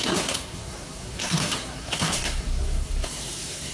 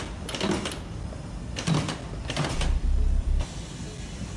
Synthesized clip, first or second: first